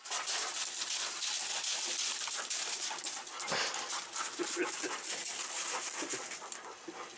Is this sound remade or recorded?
recorded